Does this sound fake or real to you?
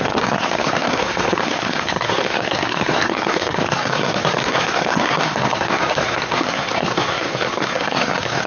fake